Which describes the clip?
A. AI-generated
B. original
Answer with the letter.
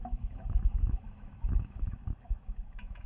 A